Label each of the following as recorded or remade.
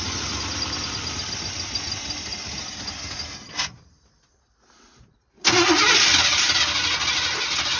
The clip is recorded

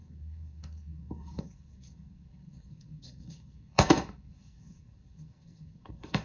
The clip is remade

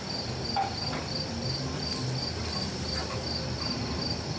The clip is recorded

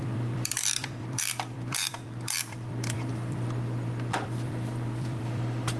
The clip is remade